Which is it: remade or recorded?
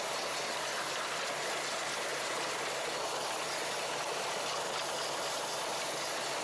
recorded